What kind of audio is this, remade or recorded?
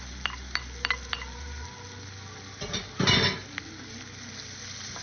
recorded